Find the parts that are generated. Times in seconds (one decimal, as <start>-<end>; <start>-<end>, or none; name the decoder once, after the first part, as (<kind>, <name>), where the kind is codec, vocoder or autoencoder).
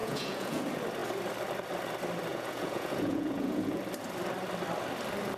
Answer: 0.0-0.6 (vocoder, Vocos); 2.3-3.8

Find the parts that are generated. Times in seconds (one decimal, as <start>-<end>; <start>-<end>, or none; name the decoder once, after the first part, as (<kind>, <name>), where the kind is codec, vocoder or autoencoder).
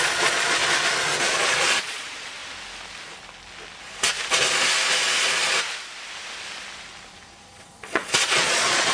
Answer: 0.0-0.6 (vocoder, Vocos); 1.2-2.4; 7.4-8.9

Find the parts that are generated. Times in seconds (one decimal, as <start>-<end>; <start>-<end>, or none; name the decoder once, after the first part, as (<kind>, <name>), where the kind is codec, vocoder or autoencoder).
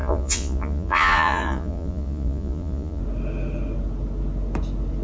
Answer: 0.0-3.0 (vocoder, Vocos)